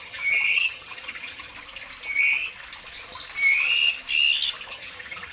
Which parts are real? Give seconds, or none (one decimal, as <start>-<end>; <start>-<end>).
1.5-4.7